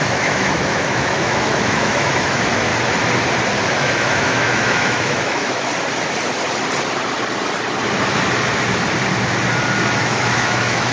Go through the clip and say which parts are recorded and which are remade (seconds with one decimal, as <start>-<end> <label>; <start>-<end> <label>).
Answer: 0.0-2.7 remade; 2.7-3.7 recorded; 3.7-5.7 remade; 5.7-10.0 recorded; 10.0-10.9 remade